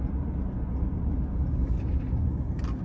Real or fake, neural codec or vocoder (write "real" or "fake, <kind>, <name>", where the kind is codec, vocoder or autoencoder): real